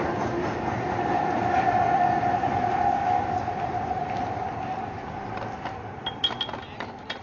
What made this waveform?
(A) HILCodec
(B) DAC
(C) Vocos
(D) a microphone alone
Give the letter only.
D